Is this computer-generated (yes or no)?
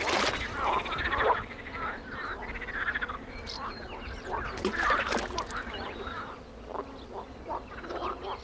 no